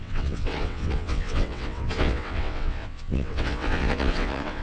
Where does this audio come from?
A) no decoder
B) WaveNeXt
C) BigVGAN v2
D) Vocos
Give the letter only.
B